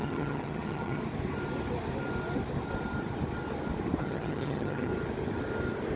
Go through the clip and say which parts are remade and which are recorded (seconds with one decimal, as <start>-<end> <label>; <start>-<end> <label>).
0.0-1.0 remade; 1.0-4.0 recorded; 4.0-4.9 remade; 4.9-6.0 recorded